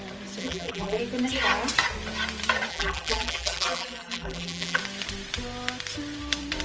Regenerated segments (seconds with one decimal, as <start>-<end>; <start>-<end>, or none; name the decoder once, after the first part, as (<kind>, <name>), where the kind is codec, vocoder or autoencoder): 0.4-1.0 (vocoder, BigVGAN v2); 2.7-4.8